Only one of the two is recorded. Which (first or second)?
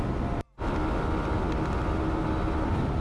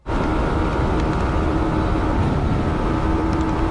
first